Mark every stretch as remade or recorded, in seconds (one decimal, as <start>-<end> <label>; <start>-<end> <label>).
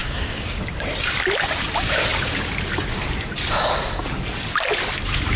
0.0-0.6 remade; 0.6-5.4 recorded